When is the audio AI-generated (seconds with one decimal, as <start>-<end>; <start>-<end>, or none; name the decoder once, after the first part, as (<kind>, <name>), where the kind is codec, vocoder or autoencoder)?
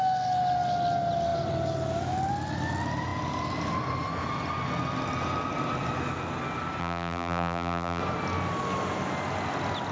6.8-8.0 (vocoder, BigVGAN v2)